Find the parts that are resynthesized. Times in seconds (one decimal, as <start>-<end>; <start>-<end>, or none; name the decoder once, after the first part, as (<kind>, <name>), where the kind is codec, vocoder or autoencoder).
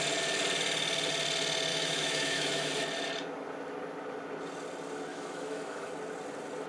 1.7-2.7 (autoencoder, DAC-VAE); 5.1-5.9